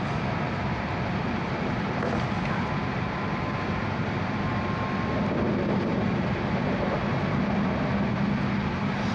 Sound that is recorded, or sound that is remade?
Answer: recorded